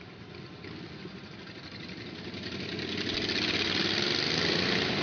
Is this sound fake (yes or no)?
no